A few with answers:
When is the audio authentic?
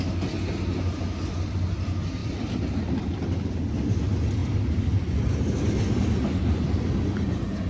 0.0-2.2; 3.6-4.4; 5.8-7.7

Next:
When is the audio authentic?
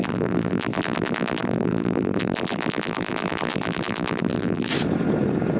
4.7-5.6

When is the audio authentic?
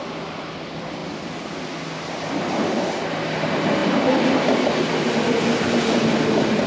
0.0-6.7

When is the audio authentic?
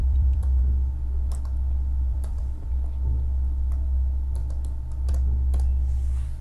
0.6-2.1; 2.7-6.4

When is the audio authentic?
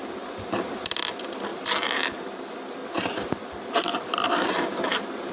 1.0-1.5; 2.4-2.8